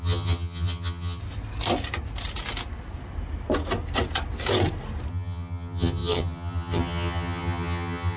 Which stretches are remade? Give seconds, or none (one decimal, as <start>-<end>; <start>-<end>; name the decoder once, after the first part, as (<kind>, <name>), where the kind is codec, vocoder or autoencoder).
0.0-1.2 (vocoder, HiFi-GAN); 5.1-8.2